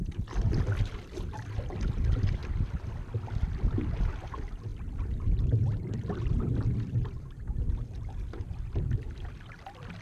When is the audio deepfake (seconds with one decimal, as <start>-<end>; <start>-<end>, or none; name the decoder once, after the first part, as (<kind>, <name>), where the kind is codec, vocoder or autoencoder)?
none